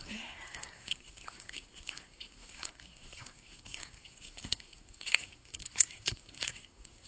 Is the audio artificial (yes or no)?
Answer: yes